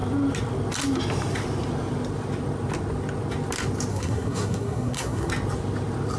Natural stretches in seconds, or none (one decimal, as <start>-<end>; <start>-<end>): 0.0-3.9; 5.3-6.2